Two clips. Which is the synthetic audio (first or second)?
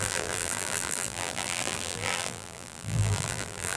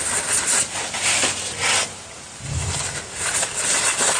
first